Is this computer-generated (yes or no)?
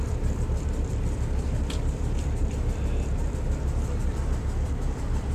no